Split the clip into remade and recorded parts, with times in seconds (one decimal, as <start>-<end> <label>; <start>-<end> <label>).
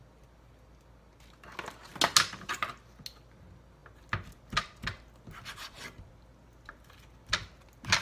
0.0-8.0 recorded